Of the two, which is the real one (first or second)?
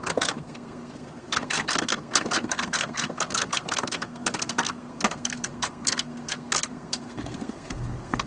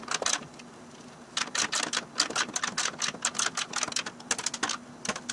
second